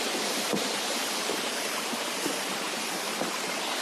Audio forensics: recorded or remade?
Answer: recorded